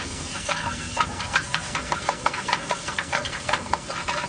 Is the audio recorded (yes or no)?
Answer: no